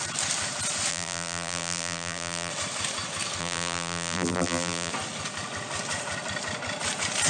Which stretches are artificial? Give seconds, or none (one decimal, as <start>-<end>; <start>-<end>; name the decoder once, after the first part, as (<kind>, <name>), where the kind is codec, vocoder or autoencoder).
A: 0.9-2.5 (vocoder, BigVGAN v2); 3.4-4.9